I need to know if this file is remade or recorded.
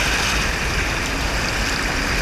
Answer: recorded